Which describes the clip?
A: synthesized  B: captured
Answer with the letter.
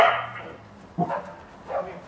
B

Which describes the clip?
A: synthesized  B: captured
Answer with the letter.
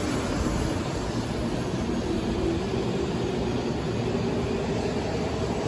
B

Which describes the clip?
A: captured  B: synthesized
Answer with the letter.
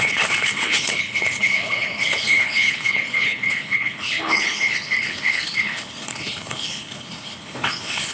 B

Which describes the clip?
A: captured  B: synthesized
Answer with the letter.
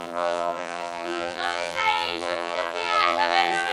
B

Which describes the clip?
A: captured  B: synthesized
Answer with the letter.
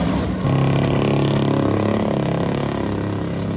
A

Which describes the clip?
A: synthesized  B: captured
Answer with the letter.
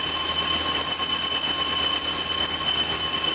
B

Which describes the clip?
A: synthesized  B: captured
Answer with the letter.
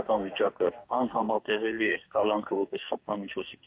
A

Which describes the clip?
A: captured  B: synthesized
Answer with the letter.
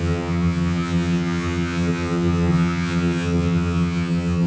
B